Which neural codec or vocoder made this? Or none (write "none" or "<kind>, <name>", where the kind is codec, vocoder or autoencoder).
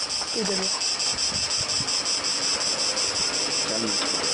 none